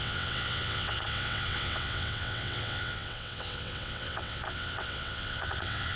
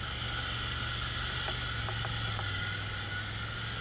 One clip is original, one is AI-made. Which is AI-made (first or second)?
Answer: first